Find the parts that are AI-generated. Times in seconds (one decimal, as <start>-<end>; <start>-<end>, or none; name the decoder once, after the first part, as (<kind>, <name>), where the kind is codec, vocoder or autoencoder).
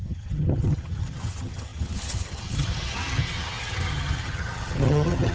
0.0-5.3 (vocoder, HiFi-GAN)